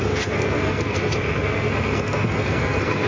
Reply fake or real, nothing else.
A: fake